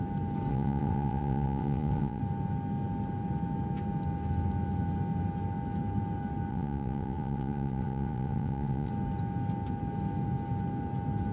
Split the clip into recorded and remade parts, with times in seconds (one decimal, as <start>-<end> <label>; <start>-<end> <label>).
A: 0.0-0.5 recorded; 0.5-2.2 remade; 2.2-6.5 recorded; 6.5-8.9 remade; 8.9-11.3 recorded

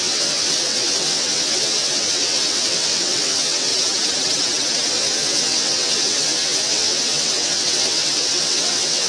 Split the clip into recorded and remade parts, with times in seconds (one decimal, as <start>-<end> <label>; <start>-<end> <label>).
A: 0.0-3.7 remade; 3.7-4.9 recorded; 4.9-9.1 remade

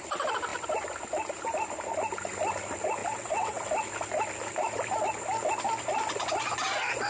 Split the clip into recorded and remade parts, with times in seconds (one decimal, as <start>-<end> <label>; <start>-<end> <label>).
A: 0.0-3.0 recorded; 3.0-3.7 remade; 3.7-7.1 recorded

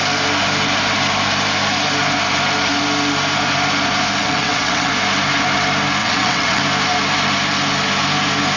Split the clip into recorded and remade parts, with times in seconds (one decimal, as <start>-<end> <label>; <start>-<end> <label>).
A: 0.0-4.2 recorded; 4.2-4.9 remade; 4.9-6.0 recorded; 6.0-6.6 remade; 6.6-8.6 recorded

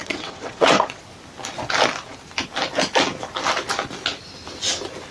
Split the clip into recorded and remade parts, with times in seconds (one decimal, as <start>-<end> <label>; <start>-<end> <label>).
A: 0.0-1.0 remade; 1.0-5.1 recorded

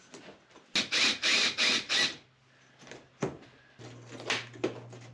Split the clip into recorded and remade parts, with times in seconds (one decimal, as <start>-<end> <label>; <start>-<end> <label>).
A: 0.0-5.1 recorded

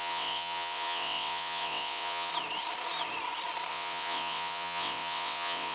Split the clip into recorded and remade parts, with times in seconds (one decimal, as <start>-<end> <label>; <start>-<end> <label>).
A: 0.0-2.3 remade; 2.3-3.7 recorded; 3.7-5.7 remade

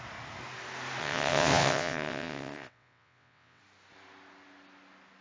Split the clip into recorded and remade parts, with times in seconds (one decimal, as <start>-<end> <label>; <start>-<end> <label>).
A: 0.0-1.0 recorded; 1.0-3.6 remade; 3.6-5.2 recorded